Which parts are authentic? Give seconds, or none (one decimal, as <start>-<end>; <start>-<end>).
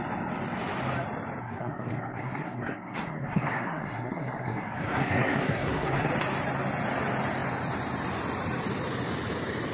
0.0-1.4; 6.1-9.7